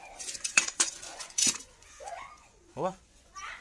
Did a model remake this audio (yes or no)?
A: yes